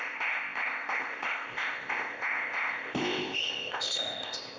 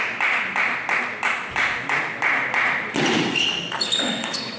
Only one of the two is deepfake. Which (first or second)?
first